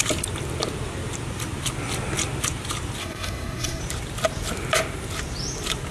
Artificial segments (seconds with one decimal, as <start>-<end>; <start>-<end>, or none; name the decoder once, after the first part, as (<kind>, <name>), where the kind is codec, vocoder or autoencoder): 3.0-3.8 (codec, SNAC)